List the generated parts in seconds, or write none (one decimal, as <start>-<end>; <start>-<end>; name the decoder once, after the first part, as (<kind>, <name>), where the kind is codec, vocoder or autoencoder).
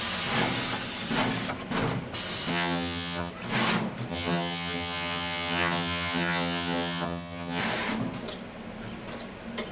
2.5-3.3 (vocoder, HiFi-GAN); 4.1-7.6